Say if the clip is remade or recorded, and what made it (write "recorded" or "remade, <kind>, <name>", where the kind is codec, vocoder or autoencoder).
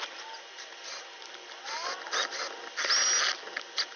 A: recorded